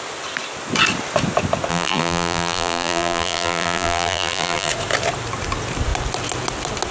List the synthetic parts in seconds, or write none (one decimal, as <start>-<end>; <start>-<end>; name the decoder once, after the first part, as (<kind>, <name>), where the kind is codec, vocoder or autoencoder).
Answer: 1.7-4.7 (vocoder, BigVGAN v2)